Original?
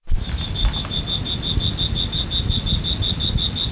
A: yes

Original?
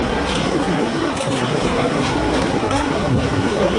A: no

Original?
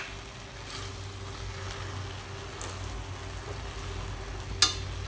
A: yes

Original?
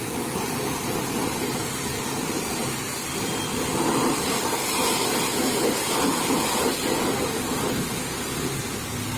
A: yes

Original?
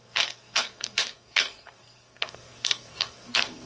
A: no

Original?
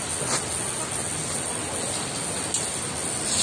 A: yes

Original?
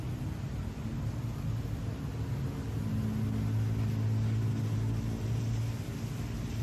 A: yes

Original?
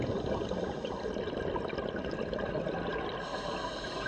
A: yes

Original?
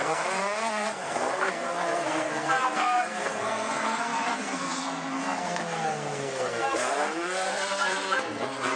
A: no